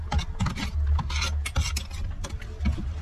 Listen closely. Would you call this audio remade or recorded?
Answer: recorded